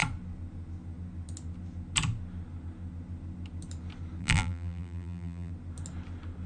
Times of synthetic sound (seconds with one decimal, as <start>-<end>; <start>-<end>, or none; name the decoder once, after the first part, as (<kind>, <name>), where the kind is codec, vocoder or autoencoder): 4.2-5.5 (vocoder, BigVGAN v2)